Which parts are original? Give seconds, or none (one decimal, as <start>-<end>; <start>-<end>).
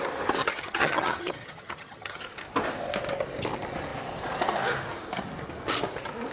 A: 0.0-0.4; 2.2-6.3